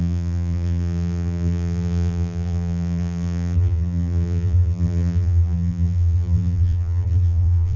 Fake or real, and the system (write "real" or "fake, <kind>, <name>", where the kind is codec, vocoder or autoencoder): fake, vocoder, BigVGAN v2